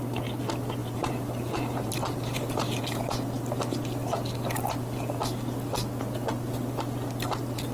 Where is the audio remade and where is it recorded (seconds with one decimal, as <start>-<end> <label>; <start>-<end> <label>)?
0.0-0.8 recorded; 0.8-3.0 remade; 3.0-7.7 recorded